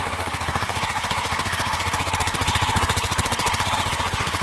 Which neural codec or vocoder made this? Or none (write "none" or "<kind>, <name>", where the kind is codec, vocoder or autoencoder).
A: codec, SNAC